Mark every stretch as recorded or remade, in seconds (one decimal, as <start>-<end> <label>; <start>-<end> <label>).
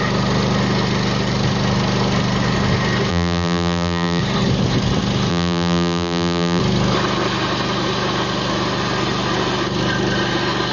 0.0-3.1 recorded; 3.1-4.2 remade; 4.2-5.3 recorded; 5.3-6.6 remade; 6.6-10.7 recorded